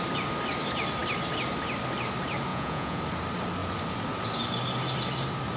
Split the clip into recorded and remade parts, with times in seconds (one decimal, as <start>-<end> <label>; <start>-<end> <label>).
0.0-2.5 recorded; 2.5-3.0 remade; 3.0-5.6 recorded